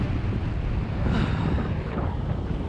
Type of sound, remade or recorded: recorded